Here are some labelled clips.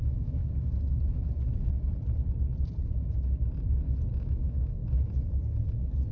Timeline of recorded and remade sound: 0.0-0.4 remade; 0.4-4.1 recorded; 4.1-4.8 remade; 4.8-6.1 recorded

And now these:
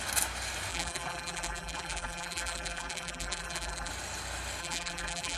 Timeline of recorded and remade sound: 0.0-0.7 recorded; 0.7-3.9 remade; 3.9-4.6 recorded; 4.6-5.4 remade

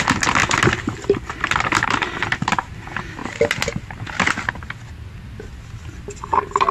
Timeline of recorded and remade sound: 0.0-6.7 recorded